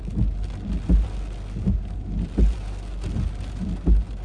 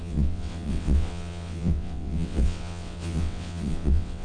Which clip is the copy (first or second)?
second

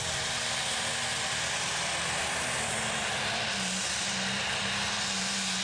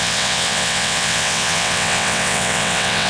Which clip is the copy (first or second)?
second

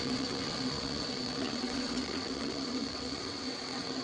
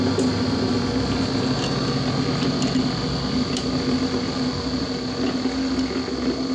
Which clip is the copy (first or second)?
first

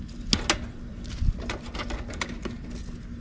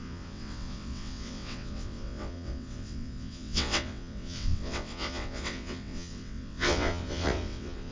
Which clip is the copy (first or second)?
second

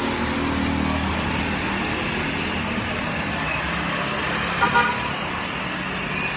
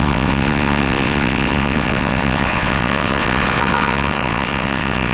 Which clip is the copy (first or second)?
second